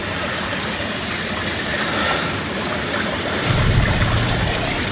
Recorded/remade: remade